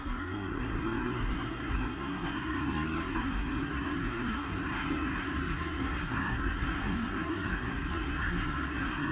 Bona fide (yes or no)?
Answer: no